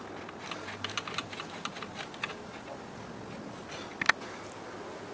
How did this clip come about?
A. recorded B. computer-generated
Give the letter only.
A